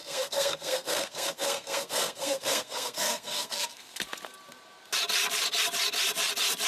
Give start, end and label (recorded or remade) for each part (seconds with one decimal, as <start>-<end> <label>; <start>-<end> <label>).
0.0-4.0 remade; 4.0-6.7 recorded